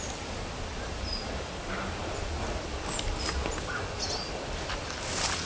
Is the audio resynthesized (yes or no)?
no